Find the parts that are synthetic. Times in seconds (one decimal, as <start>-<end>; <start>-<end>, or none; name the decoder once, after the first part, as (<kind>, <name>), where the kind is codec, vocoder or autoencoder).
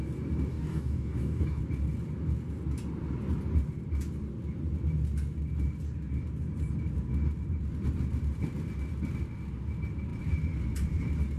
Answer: 0.5-1.6 (codec, DAC)